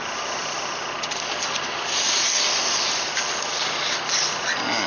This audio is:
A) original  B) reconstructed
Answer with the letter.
A